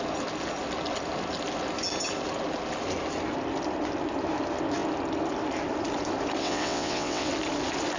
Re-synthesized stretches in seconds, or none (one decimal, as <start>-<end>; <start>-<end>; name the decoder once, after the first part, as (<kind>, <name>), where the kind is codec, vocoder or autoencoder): 6.4-7.3 (vocoder, WaveNeXt)